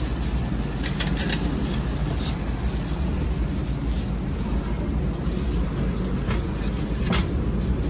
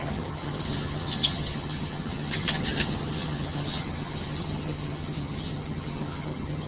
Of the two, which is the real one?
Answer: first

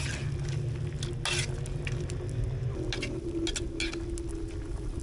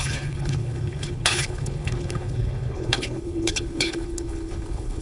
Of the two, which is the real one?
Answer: first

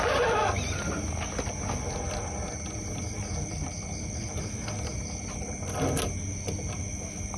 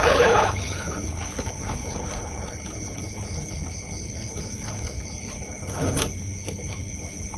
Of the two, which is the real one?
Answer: first